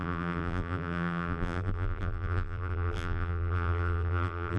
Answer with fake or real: fake